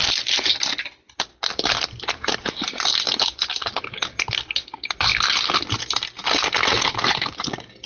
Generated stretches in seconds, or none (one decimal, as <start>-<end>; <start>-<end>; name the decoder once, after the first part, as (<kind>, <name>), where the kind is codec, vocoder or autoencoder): none